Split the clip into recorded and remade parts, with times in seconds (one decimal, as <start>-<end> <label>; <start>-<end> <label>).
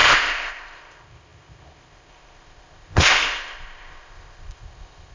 0.0-5.1 remade